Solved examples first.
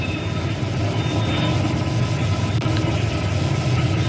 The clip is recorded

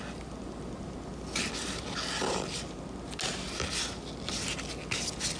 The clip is recorded